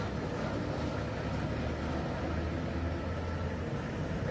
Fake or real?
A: real